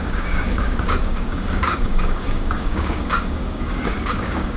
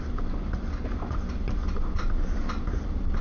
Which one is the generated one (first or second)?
first